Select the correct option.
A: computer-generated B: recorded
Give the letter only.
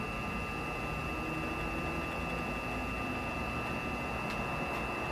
B